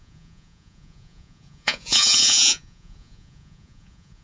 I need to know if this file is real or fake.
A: fake